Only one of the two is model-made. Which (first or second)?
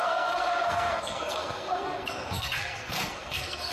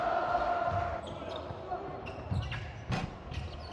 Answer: first